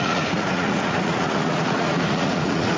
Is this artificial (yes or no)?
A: yes